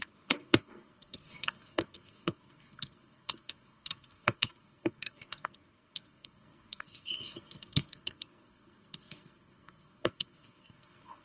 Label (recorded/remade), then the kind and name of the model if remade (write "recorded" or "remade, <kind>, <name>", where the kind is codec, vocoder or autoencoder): remade, codec, SNAC